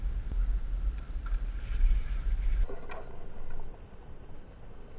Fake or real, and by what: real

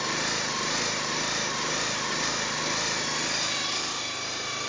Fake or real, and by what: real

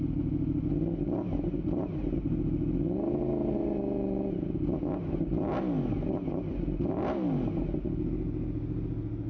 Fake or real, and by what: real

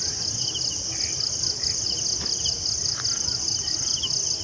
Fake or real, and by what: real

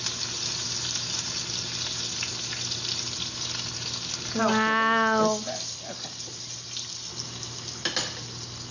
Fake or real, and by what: real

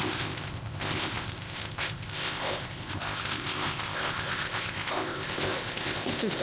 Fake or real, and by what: fake, codec, ZipCodec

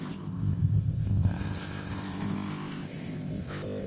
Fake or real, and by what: fake, codec, ZipCodec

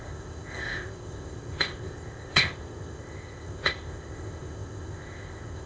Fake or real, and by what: fake, codec, ZipCodec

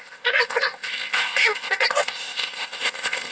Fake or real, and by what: fake, codec, ZipCodec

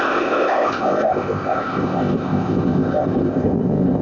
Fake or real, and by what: fake, codec, ZipCodec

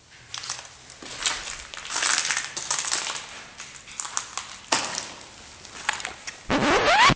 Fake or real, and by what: real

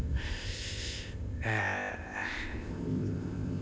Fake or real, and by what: fake, codec, ZipCodec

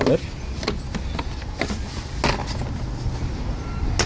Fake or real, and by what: real